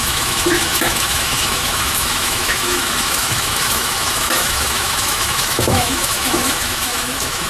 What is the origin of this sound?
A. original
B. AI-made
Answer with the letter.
B